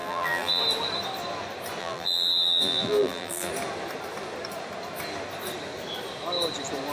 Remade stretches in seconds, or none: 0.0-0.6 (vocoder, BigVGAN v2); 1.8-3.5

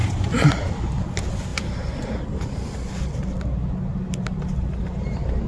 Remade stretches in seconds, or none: 0.0-0.5 (vocoder, BigVGAN v2)